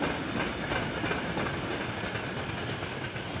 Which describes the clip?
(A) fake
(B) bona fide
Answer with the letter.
B